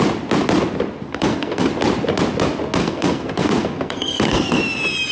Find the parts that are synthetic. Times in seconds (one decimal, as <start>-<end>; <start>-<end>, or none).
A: 1.1-1.7; 2.8-4.6